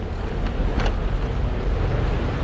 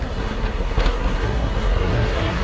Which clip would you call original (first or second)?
first